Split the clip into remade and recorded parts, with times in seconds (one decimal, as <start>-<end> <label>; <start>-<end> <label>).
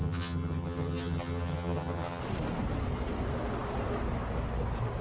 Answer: 0.0-2.2 remade; 2.2-5.0 recorded